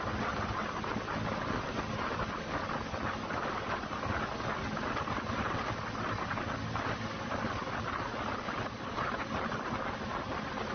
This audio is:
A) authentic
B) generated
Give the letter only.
A